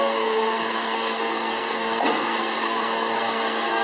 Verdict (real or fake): fake